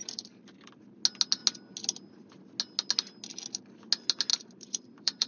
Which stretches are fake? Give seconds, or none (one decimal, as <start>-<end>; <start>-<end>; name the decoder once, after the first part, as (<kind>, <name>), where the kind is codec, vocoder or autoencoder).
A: 0.0-0.7 (vocoder, BigVGAN v2); 4.3-5.3